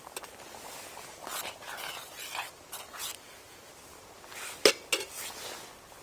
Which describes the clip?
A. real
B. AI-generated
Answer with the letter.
A